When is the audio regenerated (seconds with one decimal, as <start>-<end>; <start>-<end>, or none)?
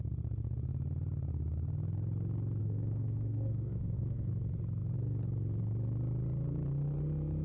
2.6-4.3